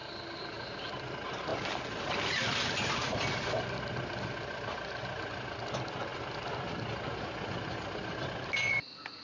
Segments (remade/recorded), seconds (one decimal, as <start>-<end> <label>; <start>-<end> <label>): 0.0-9.2 recorded